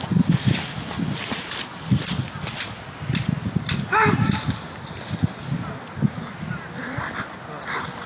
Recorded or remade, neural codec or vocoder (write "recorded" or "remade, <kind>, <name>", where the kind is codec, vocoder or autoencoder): recorded